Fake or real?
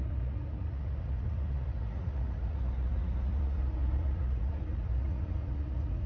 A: fake